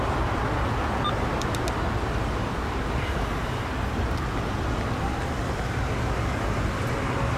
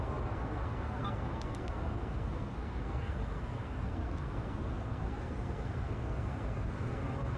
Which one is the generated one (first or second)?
second